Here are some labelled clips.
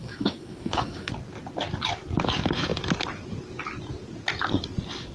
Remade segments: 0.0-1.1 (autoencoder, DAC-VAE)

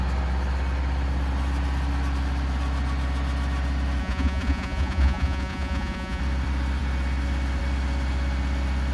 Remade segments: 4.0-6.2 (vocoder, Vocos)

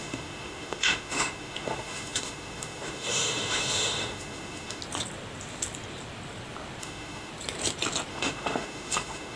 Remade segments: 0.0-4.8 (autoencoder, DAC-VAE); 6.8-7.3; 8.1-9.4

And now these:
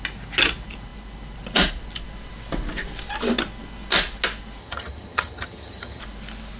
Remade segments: 4.6-6.0 (vocoder, HiFi-GAN)

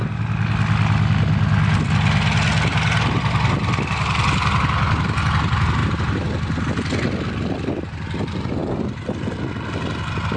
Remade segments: 8.6-9.4 (vocoder, BigVGAN v2)

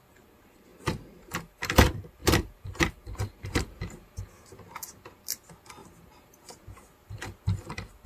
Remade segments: 2.2-4.2 (vocoder, BigVGAN v2); 5.8-7.2

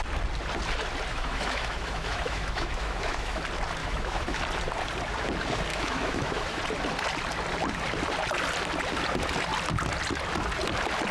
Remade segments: 1.1-3.4 (autoencoder, DAC-VAE); 3.8-4.4; 5.7-6.6

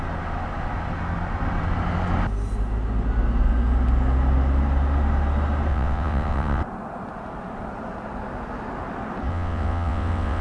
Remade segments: 5.7-6.6 (vocoder, WaveNeXt); 9.3-10.4